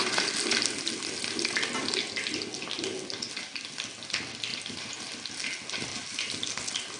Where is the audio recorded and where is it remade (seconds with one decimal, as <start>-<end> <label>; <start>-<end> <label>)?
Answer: 0.0-4.5 recorded; 4.5-5.1 remade; 5.1-5.9 recorded; 5.9-6.4 remade; 6.4-7.0 recorded